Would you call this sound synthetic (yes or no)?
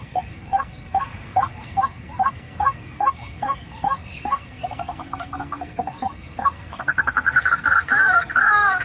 yes